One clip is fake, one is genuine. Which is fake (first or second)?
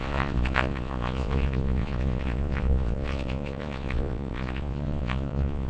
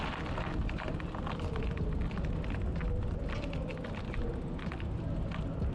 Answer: first